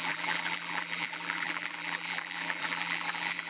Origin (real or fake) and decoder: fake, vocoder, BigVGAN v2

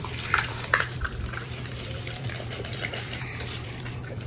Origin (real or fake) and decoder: fake, vocoder, BigVGAN v2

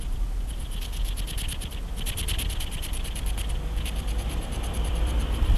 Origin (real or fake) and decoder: fake, vocoder, BigVGAN v2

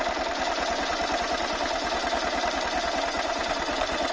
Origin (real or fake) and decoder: fake, vocoder, BigVGAN v2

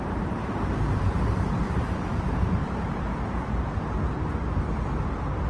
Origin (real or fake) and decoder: fake, vocoder, BigVGAN v2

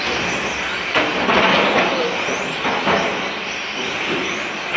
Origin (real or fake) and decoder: real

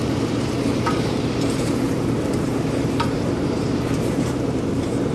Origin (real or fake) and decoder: fake, vocoder, BigVGAN v2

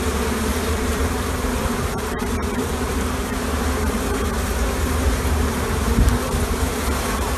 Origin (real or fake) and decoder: fake, vocoder, BigVGAN v2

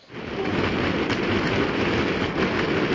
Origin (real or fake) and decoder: fake, vocoder, BigVGAN v2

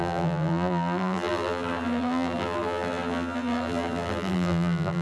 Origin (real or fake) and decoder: fake, vocoder, BigVGAN v2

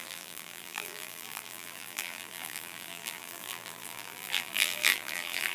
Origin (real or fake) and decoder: fake, vocoder, BigVGAN v2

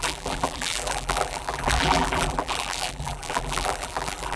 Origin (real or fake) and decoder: fake, vocoder, BigVGAN v2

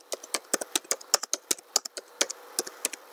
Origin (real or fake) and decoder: real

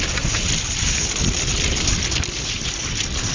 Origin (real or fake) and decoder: fake, vocoder, BigVGAN v2